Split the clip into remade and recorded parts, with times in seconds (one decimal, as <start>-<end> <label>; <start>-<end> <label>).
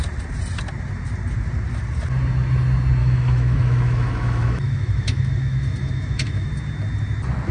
0.0-3.0 recorded; 3.0-6.5 remade; 6.5-7.5 recorded